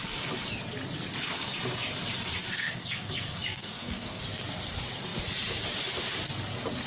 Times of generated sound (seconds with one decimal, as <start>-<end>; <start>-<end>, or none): 2.6-4.2